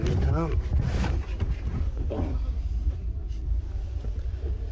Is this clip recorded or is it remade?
recorded